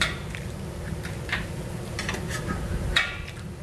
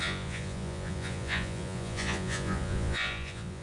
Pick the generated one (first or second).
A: second